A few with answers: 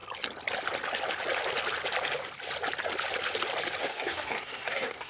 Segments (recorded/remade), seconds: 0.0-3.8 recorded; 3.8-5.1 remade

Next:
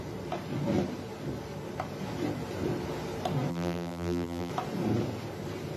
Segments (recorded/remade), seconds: 0.0-3.5 recorded; 3.5-4.5 remade; 4.5-5.8 recorded

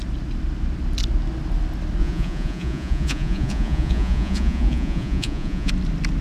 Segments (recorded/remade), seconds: 0.0-2.0 recorded; 2.0-5.7 remade; 5.7-6.2 recorded

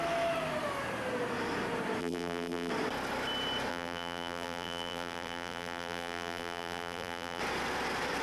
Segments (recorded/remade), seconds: 0.0-2.0 recorded; 2.0-2.7 remade; 2.7-3.7 recorded; 3.7-7.4 remade; 7.4-8.2 recorded